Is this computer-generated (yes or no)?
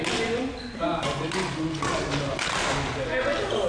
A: no